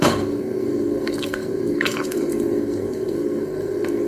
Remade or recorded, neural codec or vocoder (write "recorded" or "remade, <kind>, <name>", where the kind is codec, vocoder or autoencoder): remade, codec, SNAC